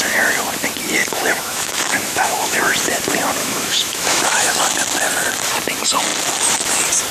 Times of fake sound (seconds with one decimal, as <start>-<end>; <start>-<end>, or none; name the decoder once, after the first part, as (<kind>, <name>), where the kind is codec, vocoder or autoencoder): 1.0-2.6 (autoencoder, DAC-VAE); 3.4-4.6